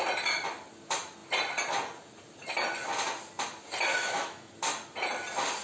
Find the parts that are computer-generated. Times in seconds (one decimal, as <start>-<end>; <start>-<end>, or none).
3.9-4.5